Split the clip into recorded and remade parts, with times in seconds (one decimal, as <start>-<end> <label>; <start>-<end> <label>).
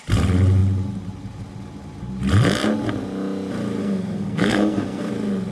0.0-3.8 recorded; 3.8-5.1 remade; 5.1-5.5 recorded